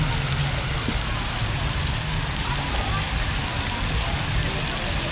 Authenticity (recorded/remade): recorded